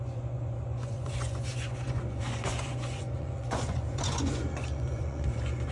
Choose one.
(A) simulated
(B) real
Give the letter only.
A